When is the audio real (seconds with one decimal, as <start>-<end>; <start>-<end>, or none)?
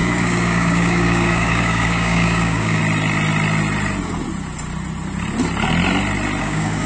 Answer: 2.8-6.4